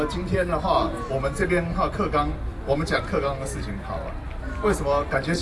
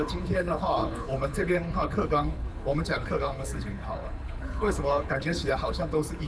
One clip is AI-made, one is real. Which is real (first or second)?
first